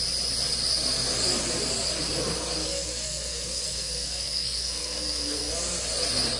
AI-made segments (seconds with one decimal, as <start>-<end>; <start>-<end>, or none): 2.6-5.5